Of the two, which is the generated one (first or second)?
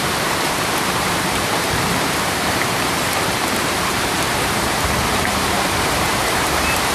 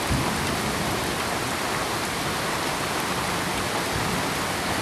first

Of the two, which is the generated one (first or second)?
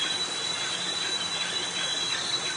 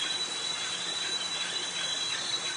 second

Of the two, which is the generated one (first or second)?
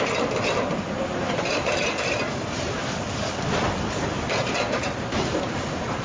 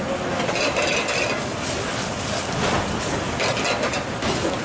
first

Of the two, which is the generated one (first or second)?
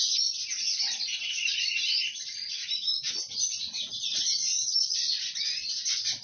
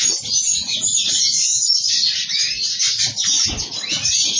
first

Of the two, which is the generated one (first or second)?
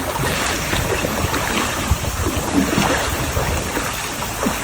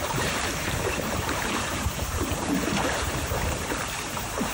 second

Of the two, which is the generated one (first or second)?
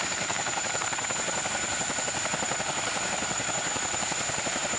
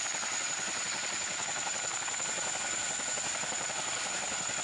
first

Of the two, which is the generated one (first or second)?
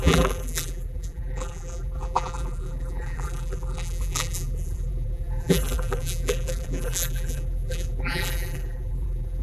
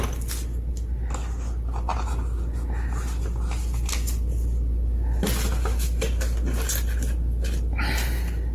first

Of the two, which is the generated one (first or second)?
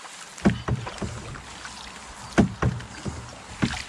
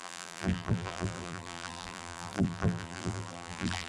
second